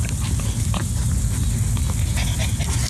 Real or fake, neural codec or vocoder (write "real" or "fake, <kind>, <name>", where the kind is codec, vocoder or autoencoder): real